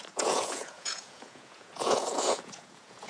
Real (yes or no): no